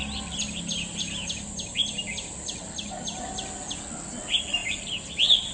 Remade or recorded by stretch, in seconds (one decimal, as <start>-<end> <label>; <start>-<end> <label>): 0.0-5.5 recorded